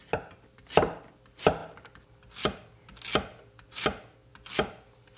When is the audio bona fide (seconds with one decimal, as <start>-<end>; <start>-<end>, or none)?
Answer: 0.0-5.2